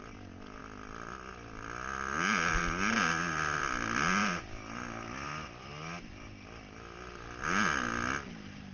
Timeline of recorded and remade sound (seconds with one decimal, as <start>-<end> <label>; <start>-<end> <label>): 0.0-8.7 recorded